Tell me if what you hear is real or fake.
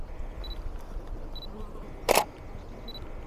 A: real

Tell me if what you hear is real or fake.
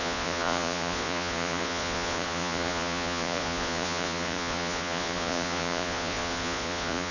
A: fake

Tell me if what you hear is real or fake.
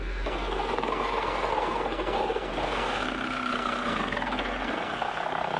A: fake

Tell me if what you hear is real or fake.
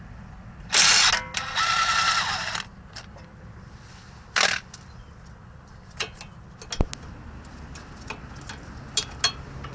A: real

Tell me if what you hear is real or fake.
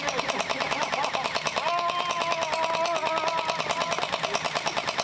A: real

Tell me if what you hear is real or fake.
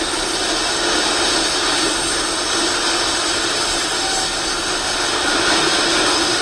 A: real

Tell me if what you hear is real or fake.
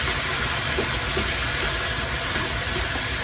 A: real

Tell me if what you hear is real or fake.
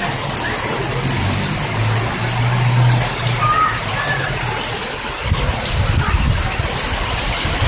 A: real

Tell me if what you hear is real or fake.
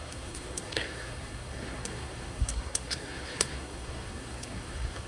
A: fake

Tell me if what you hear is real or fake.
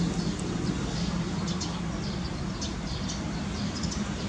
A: real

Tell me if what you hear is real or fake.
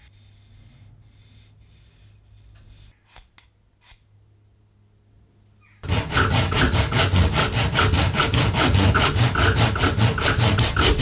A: real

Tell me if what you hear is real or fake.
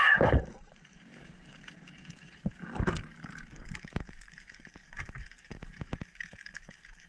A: fake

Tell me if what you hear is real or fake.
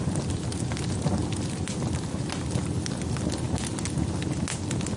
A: real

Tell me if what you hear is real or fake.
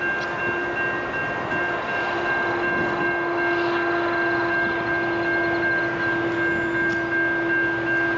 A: real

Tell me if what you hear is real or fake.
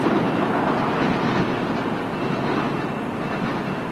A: real